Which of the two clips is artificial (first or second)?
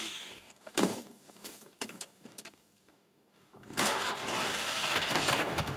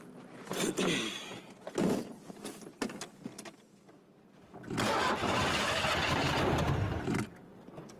first